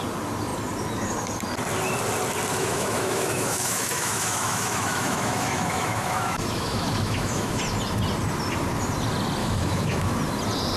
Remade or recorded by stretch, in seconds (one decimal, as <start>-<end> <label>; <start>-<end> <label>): 0.0-2.5 recorded; 2.5-7.6 remade; 7.6-9.4 recorded; 9.4-10.1 remade; 10.1-10.8 recorded